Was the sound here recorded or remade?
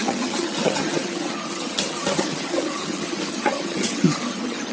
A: remade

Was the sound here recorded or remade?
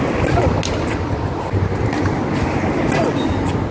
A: recorded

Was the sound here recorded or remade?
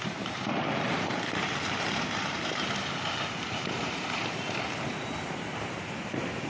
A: remade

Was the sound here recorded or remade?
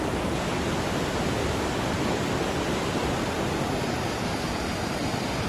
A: recorded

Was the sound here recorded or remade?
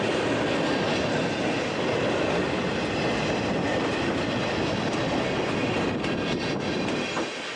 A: recorded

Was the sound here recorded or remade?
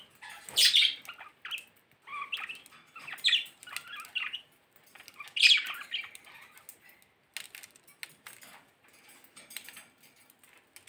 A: recorded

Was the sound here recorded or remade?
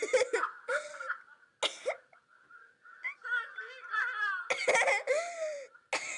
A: recorded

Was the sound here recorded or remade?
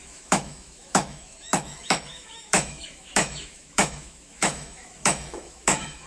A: remade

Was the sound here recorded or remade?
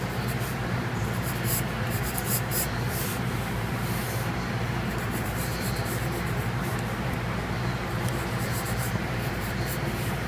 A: remade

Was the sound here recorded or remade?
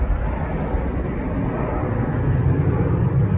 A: recorded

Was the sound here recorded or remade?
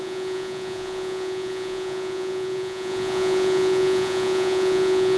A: remade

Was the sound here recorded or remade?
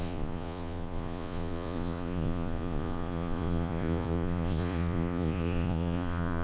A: remade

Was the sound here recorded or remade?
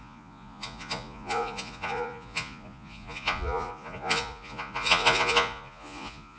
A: remade